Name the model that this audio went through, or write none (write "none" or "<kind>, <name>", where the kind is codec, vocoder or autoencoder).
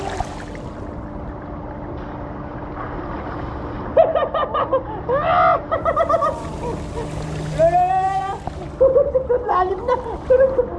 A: none